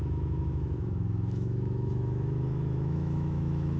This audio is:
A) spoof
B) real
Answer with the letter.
A